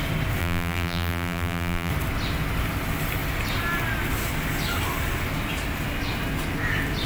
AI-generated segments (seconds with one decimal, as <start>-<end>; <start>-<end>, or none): 0.4-1.9